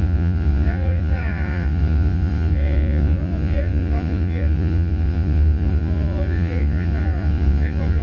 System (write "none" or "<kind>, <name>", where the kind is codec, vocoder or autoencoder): vocoder, Vocos